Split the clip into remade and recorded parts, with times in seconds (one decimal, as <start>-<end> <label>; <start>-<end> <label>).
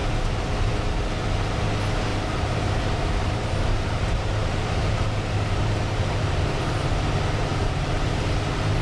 0.0-2.1 recorded; 2.1-7.0 remade; 7.0-7.5 recorded; 7.5-8.2 remade; 8.2-8.8 recorded